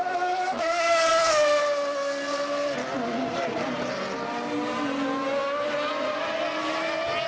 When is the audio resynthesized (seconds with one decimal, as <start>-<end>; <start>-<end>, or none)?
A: none